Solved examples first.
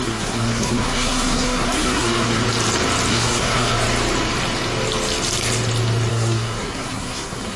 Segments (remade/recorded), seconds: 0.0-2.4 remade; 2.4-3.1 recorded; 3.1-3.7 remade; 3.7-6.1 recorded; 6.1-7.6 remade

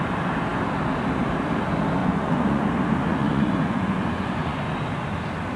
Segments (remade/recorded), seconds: 0.0-2.0 recorded; 2.0-2.7 remade; 2.7-3.1 recorded; 3.1-4.8 remade; 4.8-5.6 recorded

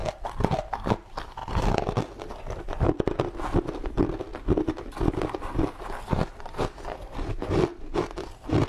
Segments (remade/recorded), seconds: 0.0-0.9 recorded; 0.9-1.4 remade; 1.4-2.4 recorded; 2.4-4.3 remade; 4.3-5.1 recorded; 5.1-7.7 remade; 7.7-8.7 recorded

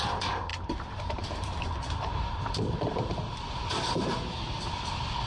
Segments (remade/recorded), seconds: 0.0-5.3 remade

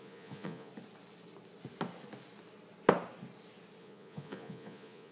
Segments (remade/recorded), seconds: 0.0-0.7 remade; 0.7-3.8 recorded; 3.8-5.1 remade